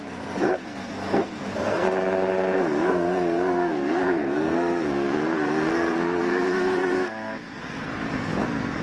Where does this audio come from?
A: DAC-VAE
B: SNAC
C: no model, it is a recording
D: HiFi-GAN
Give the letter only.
B